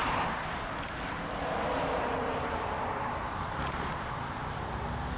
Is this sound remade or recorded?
recorded